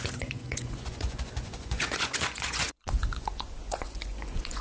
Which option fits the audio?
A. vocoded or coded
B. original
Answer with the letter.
A